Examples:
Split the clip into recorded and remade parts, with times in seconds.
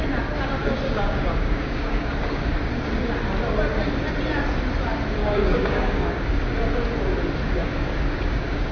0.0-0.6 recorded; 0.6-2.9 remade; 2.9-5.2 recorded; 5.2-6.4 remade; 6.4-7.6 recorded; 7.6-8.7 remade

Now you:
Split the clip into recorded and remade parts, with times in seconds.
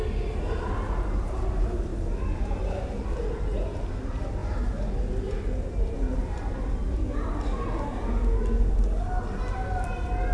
0.0-10.3 recorded